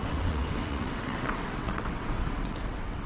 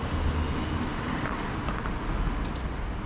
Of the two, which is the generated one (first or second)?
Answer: first